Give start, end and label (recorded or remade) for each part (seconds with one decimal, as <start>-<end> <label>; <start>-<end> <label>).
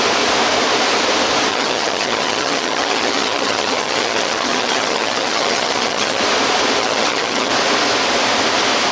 0.0-1.5 recorded; 1.5-6.2 remade; 6.2-6.8 recorded; 6.8-7.5 remade; 7.5-8.9 recorded